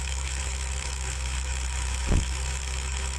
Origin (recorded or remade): remade